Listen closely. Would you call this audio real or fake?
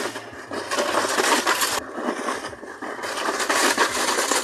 real